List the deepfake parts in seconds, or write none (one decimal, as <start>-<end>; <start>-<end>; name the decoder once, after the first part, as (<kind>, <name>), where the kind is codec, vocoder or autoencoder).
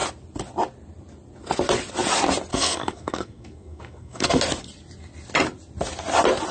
2.5-4.4 (codec, SNAC)